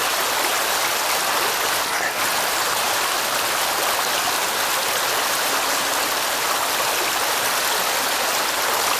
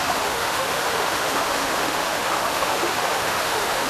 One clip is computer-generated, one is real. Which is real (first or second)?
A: first